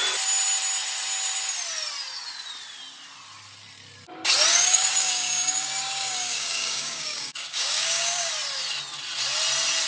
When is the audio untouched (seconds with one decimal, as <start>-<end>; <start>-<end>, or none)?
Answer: 0.0-4.5; 8.3-9.9